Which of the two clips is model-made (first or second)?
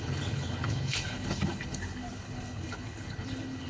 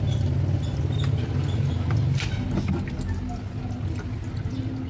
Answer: first